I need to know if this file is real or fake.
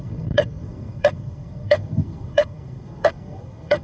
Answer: fake